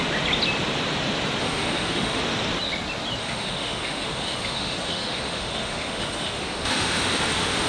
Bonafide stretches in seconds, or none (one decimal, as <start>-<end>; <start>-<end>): 0.0-1.4; 2.2-3.2